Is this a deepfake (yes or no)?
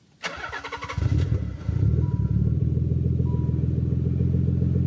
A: no